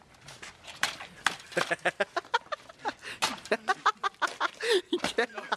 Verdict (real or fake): real